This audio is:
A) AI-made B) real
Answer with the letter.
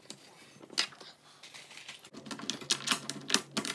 B